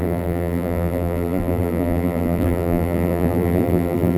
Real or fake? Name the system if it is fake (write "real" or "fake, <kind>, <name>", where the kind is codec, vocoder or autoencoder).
fake, vocoder, BigVGAN v2